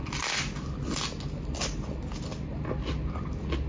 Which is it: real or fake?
real